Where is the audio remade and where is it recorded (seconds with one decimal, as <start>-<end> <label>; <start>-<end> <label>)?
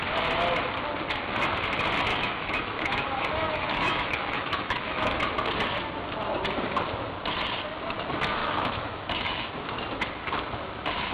0.0-2.1 recorded; 2.1-5.2 remade; 5.2-8.4 recorded; 8.4-9.5 remade; 9.5-11.1 recorded